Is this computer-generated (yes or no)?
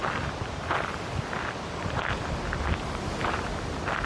no